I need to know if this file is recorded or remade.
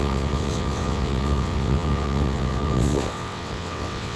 remade